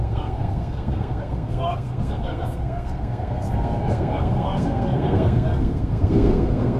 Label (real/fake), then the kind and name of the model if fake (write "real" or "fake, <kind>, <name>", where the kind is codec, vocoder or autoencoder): fake, codec, SNAC